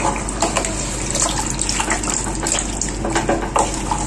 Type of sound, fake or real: real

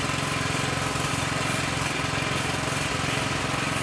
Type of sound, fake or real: real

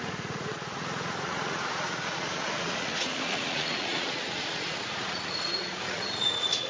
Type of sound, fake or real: fake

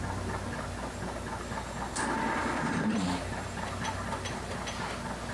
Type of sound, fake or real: real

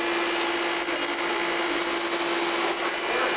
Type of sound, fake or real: real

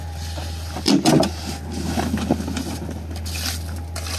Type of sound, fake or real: real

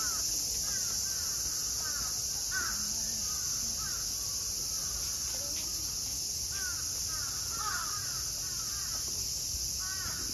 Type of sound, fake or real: real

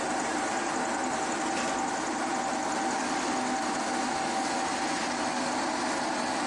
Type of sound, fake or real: real